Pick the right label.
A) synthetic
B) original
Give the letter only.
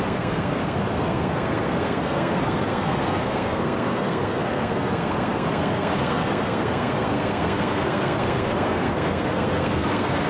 A